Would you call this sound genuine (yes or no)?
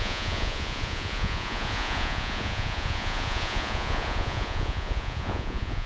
no